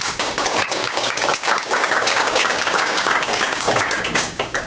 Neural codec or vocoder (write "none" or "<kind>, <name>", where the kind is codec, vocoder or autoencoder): codec, DAC